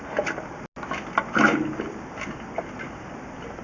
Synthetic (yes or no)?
no